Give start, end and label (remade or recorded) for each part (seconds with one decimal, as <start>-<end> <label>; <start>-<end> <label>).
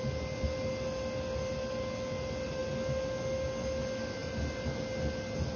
0.0-5.6 recorded